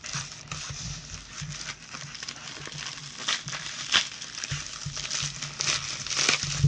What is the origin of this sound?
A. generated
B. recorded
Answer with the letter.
B